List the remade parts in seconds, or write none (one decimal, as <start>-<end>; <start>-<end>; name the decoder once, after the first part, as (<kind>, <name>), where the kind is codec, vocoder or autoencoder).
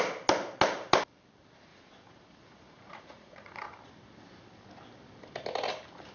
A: 1.7-3.6 (vocoder, Vocos)